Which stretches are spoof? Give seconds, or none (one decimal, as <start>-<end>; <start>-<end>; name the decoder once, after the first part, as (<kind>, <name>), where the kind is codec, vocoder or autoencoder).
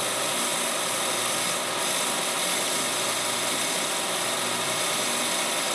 none